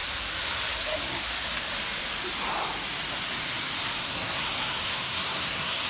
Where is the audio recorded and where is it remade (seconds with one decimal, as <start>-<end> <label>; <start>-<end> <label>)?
0.0-4.0 recorded; 4.0-5.9 remade

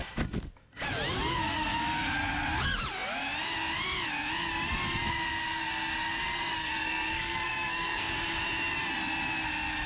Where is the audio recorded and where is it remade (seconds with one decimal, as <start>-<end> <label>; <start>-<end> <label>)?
0.0-6.6 recorded; 6.6-8.1 remade; 8.1-9.9 recorded

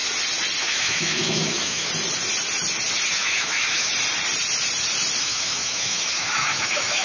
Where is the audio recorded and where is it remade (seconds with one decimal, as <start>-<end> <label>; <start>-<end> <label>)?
0.0-0.6 recorded; 0.6-1.9 remade; 1.9-3.1 recorded; 3.1-3.9 remade; 3.9-5.2 recorded; 5.2-7.0 remade

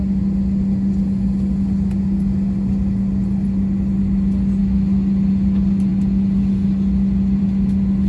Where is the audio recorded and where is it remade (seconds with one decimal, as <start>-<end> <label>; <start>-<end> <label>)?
0.0-8.1 recorded

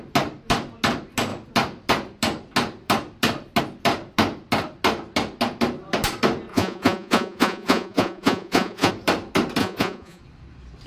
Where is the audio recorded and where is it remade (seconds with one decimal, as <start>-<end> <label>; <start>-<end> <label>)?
0.0-6.5 recorded; 6.5-8.9 remade; 8.9-9.6 recorded; 9.6-10.2 remade; 10.2-10.9 recorded